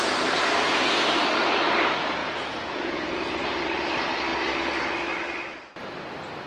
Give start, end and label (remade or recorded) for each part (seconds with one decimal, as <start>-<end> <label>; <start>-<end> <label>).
0.0-2.2 recorded; 2.2-3.4 remade; 3.4-6.5 recorded